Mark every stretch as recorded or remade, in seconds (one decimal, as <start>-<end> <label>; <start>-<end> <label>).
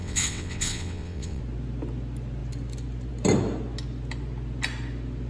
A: 0.0-1.4 remade; 1.4-5.3 recorded